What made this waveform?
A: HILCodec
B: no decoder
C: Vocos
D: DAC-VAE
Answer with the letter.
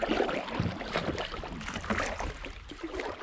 B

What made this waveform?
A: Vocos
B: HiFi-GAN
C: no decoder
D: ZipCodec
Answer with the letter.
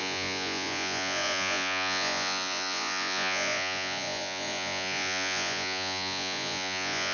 A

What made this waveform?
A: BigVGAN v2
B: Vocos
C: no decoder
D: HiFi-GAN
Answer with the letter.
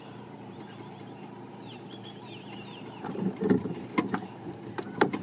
A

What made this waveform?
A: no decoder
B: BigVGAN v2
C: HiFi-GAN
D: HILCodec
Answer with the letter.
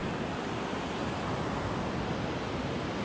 A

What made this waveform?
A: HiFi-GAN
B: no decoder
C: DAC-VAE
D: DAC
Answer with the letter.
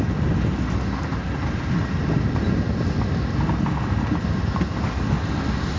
B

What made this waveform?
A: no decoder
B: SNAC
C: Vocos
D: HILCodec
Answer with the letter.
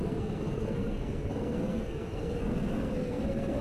B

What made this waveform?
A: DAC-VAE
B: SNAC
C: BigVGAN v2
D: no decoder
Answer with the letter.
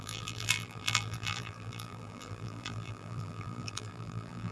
C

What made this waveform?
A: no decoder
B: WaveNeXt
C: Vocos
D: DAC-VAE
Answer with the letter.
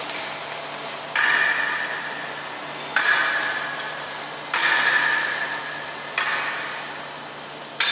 A